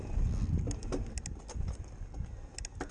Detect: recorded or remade recorded